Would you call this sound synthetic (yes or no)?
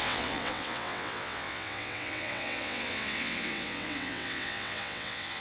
yes